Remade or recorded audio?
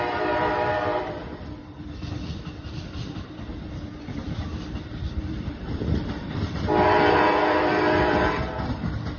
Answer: remade